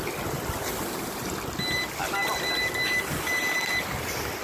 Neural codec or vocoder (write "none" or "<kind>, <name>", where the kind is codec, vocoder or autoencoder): none